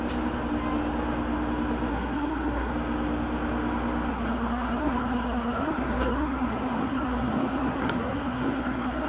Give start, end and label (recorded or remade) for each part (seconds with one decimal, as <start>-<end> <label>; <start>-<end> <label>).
0.0-1.9 recorded; 1.9-2.7 remade; 2.7-4.1 recorded; 4.1-9.1 remade